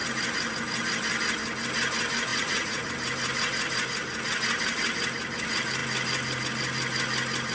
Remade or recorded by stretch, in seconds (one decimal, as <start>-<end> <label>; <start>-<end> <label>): 0.0-2.3 recorded; 2.3-2.9 remade; 2.9-7.5 recorded